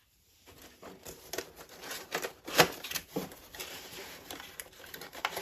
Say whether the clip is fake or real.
fake